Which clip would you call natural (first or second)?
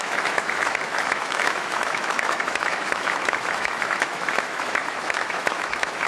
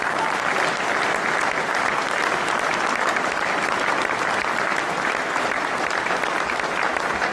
second